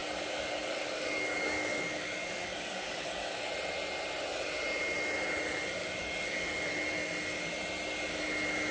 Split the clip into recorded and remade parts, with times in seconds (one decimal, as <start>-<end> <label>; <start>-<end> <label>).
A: 0.0-3.5 remade; 3.5-5.8 recorded; 5.8-6.7 remade; 6.7-8.7 recorded